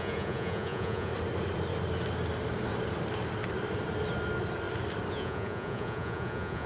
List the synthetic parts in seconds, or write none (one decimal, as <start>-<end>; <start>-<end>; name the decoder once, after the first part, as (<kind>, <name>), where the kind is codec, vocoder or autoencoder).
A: 0.0-1.1 (vocoder, Vocos); 5.1-6.7